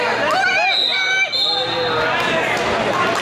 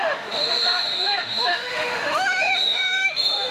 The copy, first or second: second